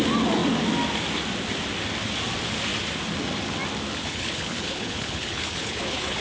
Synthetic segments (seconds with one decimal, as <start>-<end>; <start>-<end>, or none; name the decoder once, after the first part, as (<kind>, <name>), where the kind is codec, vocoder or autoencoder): 4.0-6.2 (codec, HILCodec)